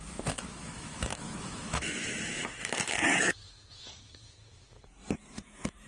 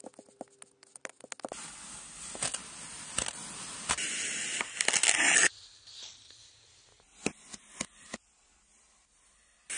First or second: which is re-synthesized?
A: first